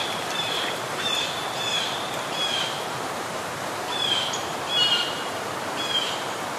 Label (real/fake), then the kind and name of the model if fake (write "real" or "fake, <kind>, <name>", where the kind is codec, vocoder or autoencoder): fake, vocoder, BigVGAN v2